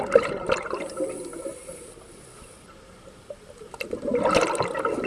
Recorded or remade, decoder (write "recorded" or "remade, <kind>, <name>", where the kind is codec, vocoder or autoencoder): recorded